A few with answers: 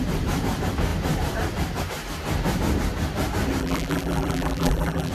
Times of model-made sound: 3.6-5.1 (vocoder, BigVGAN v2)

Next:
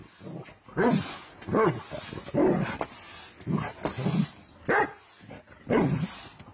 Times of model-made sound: none

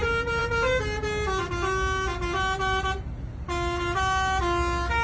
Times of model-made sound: none